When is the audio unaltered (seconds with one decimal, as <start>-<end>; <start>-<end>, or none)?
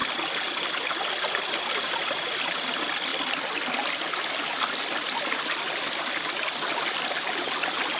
0.0-8.0